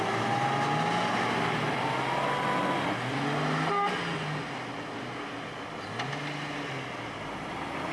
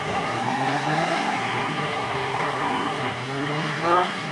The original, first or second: first